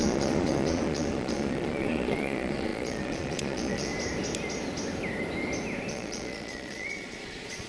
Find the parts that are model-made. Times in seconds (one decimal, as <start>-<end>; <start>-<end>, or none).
0.0-3.9; 5.9-7.7